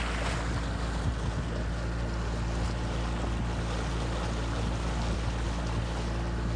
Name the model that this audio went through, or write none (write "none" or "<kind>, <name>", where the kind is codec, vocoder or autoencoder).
none